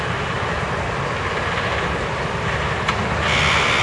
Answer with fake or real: real